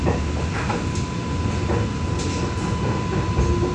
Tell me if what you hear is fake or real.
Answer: real